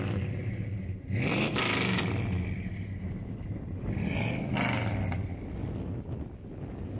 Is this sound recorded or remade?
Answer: recorded